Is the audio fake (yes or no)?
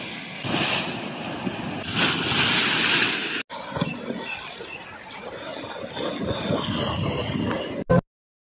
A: no